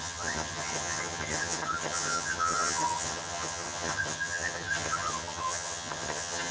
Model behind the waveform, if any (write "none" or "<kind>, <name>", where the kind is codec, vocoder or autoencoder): vocoder, HiFi-GAN